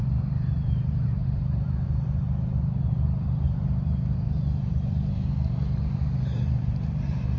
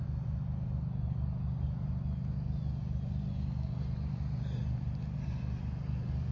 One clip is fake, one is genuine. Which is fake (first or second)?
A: first